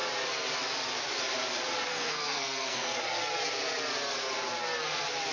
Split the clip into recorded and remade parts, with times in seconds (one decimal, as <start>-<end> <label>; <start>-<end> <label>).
0.0-1.9 recorded; 1.9-3.0 remade; 3.0-5.3 recorded